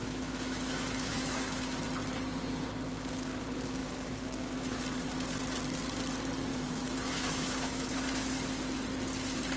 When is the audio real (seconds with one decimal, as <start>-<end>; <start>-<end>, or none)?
1.6-3.8; 4.8-6.5; 8.3-9.6